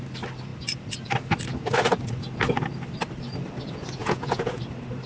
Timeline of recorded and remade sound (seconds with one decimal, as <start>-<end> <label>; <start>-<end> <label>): 0.0-4.0 recorded; 4.0-4.6 remade; 4.6-5.1 recorded